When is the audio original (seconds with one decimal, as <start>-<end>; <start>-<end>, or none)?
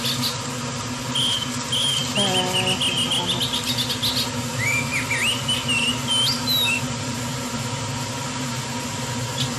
0.0-9.6